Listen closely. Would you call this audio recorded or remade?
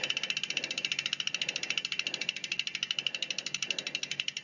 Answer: recorded